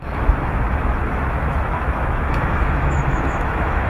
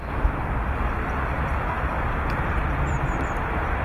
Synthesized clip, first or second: first